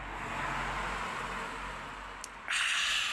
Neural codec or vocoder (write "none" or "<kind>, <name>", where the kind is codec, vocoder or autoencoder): none